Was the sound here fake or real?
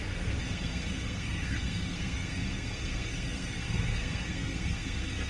fake